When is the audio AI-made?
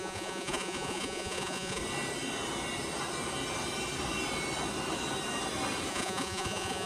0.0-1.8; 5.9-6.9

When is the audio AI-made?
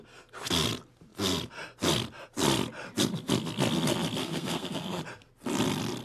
4.2-5.0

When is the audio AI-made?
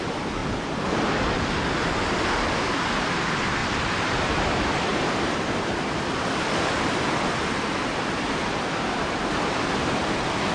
3.6-4.4; 4.9-5.7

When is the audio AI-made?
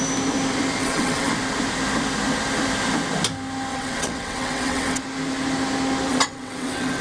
0.8-1.3; 3.7-5.0; 6.1-7.0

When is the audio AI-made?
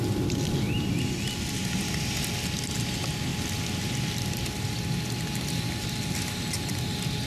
none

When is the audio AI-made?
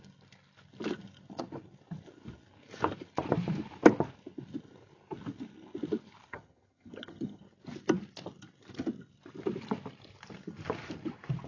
6.3-7.4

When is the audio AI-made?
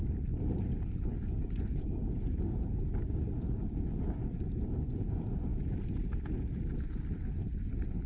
none